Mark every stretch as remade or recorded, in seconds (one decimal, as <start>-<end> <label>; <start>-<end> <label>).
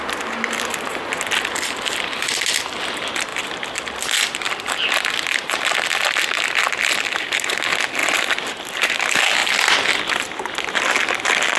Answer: 0.0-11.6 recorded